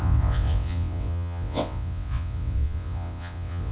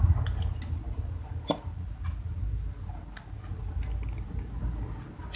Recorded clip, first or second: second